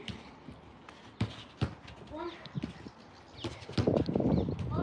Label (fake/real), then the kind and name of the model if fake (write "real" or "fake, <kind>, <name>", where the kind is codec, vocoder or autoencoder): real